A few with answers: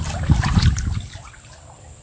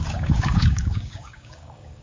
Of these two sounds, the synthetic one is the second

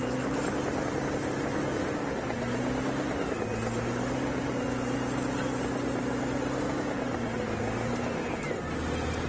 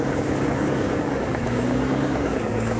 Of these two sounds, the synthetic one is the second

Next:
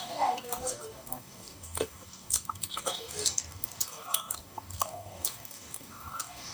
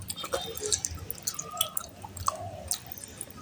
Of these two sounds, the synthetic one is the first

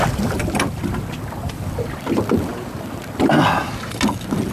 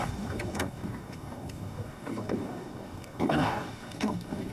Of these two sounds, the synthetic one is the second